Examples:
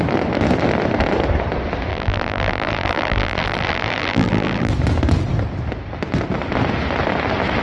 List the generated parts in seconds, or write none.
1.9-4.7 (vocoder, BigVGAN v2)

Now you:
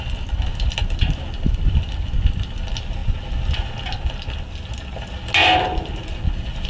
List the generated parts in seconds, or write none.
none

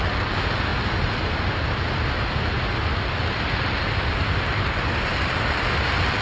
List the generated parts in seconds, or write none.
none

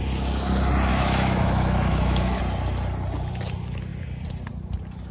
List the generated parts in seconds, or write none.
0.9-2.4 (autoencoder, DAC-VAE)